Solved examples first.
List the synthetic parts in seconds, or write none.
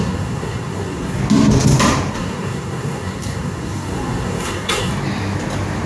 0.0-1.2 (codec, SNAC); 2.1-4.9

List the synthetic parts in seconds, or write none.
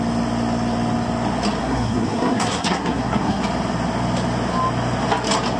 1.6-3.4 (codec, SNAC)